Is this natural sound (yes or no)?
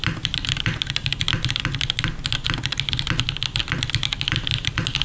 yes